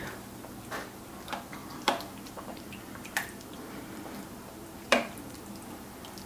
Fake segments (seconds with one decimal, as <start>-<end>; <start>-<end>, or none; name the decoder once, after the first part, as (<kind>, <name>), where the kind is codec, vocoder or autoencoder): 1.6-5.4 (vocoder, BigVGAN v2)